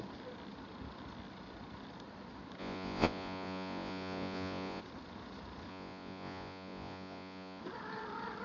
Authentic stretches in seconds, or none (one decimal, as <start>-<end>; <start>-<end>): 0.0-2.6; 4.8-5.7; 7.6-8.4

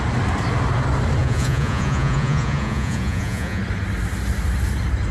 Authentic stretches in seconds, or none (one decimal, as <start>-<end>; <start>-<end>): 0.0-1.2; 3.6-5.1